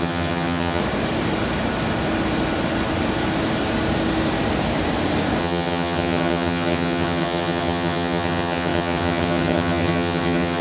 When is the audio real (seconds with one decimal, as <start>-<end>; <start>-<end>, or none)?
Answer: 0.8-5.4